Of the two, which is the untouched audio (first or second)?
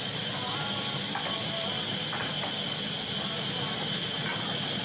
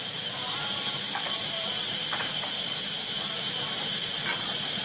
first